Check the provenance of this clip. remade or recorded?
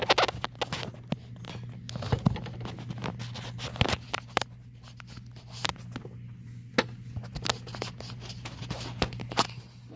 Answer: recorded